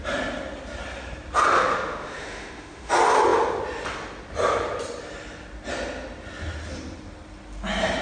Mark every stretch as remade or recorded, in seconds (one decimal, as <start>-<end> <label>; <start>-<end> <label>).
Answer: 0.0-1.7 recorded; 1.7-2.9 remade; 2.9-8.0 recorded